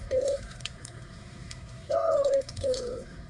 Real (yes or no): no